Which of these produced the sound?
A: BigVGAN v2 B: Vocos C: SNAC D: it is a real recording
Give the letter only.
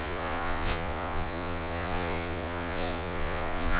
B